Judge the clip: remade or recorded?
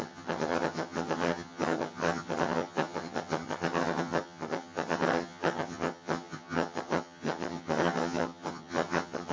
remade